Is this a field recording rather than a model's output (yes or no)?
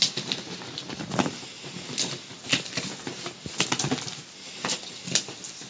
yes